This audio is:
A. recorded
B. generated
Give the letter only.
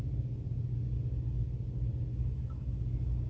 A